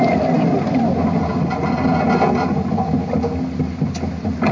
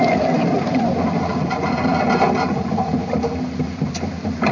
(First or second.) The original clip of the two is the first